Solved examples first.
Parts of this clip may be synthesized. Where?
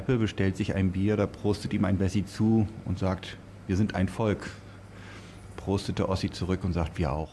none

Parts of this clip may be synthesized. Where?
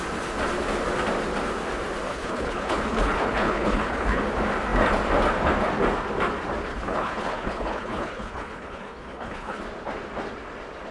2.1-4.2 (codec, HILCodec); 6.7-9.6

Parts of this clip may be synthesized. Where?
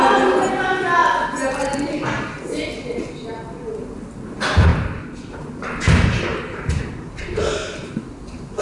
6.3-8.0 (vocoder, BigVGAN v2)